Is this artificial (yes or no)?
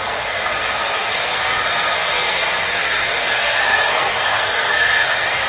yes